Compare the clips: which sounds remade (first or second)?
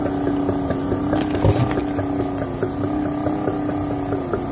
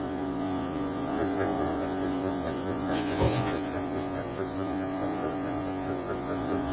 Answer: second